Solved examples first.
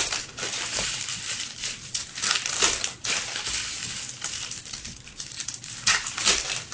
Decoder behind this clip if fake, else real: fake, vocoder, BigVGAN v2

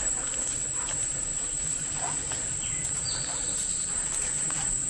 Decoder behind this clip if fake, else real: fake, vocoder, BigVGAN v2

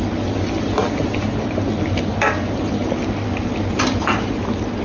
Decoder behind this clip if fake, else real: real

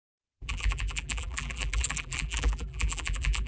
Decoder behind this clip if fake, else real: fake, vocoder, BigVGAN v2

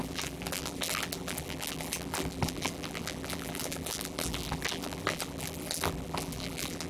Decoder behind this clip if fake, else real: fake, vocoder, BigVGAN v2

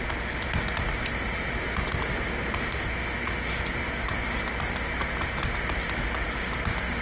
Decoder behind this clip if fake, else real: real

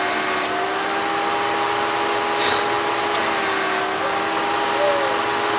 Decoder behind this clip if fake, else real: fake, vocoder, BigVGAN v2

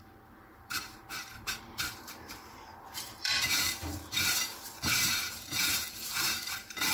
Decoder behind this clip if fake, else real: fake, vocoder, BigVGAN v2